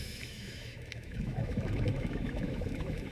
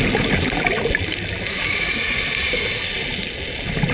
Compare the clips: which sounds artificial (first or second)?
first